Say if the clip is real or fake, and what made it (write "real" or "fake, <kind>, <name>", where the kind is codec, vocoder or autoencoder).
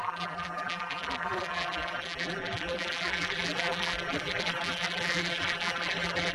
fake, vocoder, BigVGAN v2